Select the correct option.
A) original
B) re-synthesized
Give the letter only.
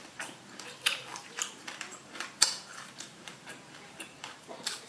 B